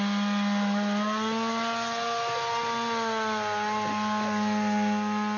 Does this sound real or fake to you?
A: real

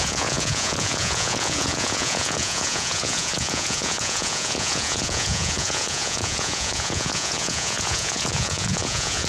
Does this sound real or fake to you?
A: fake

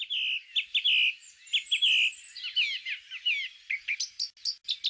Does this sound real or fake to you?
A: real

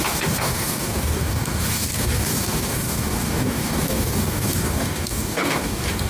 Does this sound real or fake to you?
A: fake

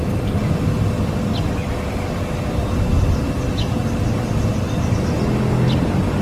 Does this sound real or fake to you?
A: real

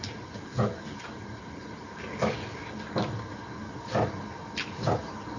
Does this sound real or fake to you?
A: real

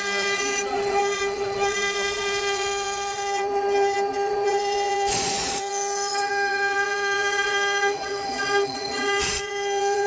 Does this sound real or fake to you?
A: fake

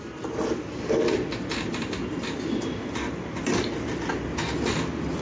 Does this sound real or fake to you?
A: real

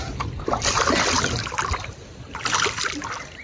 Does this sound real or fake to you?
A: real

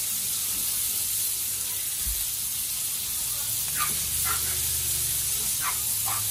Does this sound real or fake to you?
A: real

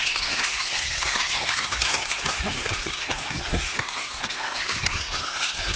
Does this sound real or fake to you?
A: fake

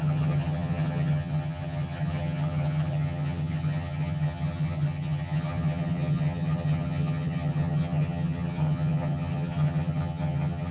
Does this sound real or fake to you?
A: fake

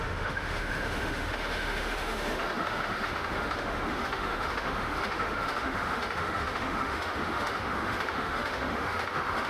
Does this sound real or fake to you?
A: fake